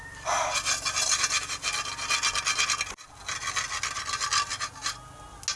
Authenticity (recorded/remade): recorded